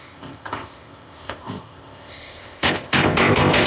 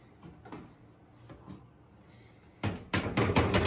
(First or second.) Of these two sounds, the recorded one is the second